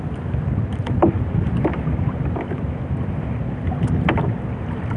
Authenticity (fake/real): real